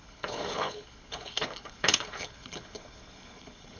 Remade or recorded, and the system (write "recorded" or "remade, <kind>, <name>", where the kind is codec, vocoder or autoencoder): remade, codec, HILCodec